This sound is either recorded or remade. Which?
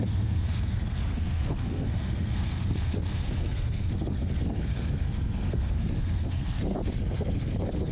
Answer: remade